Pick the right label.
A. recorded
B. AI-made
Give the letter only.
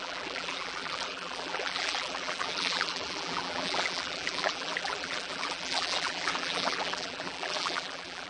B